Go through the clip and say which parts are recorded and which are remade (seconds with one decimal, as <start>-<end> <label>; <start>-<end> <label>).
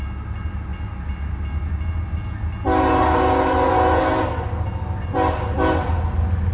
0.0-6.5 recorded